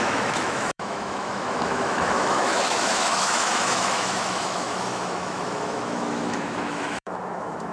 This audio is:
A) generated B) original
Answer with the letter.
A